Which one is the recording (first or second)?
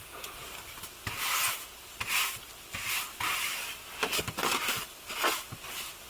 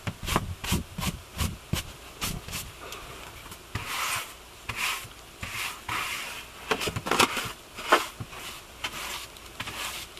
second